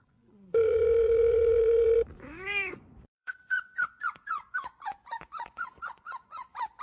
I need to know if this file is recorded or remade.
remade